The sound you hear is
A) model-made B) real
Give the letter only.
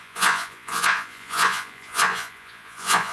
A